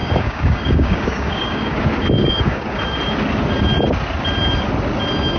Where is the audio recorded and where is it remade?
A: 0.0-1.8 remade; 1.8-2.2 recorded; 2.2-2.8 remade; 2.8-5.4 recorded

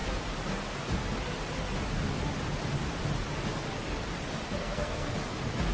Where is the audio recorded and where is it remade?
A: 0.0-4.6 recorded; 4.6-5.1 remade; 5.1-5.7 recorded

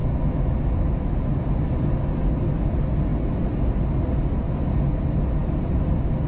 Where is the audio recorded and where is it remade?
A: 0.0-5.4 recorded; 5.4-6.3 remade

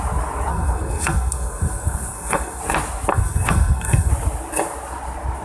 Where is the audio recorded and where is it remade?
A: 0.0-0.5 recorded; 0.5-2.6 remade; 2.6-3.1 recorded; 3.1-4.1 remade; 4.1-5.4 recorded

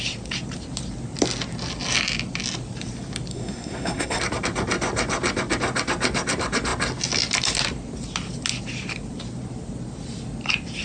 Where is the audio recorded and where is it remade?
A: 0.0-3.3 recorded; 3.3-4.2 remade; 4.2-10.8 recorded

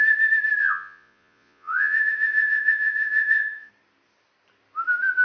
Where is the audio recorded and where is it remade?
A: 0.0-0.6 recorded; 0.6-3.7 remade; 3.7-5.2 recorded

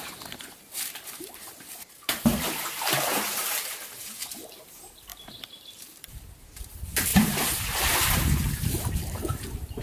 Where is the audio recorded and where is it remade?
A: 0.0-3.4 remade; 3.4-3.9 recorded; 3.9-5.1 remade; 5.1-5.7 recorded; 5.7-9.8 remade

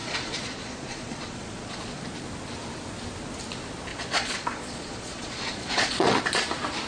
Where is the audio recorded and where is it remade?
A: 0.0-2.0 remade; 2.0-3.9 recorded; 3.9-6.2 remade; 6.2-6.9 recorded